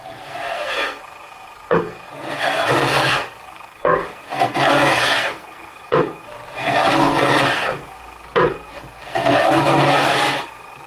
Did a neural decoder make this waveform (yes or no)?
yes